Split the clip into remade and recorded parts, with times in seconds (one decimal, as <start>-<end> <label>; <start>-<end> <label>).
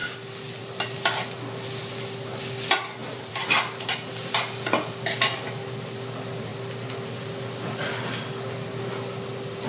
0.0-3.0 recorded; 3.0-3.6 remade; 3.6-9.7 recorded